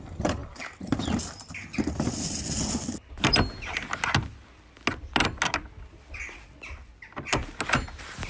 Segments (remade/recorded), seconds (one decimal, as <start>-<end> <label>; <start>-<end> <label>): 0.0-8.3 recorded